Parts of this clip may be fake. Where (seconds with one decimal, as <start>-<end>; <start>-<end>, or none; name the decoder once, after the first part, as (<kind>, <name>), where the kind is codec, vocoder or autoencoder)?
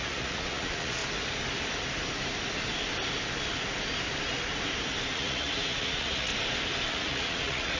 0.0-1.0 (vocoder, Vocos); 5.1-6.3; 6.9-7.8